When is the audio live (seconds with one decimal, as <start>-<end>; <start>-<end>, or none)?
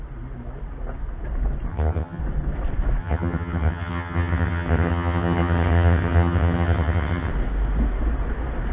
0.0-1.7; 2.2-3.0; 7.3-8.7